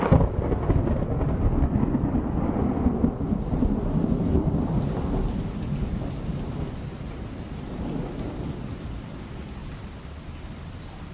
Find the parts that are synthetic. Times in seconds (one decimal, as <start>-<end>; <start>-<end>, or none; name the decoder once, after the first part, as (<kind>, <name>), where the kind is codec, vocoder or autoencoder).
none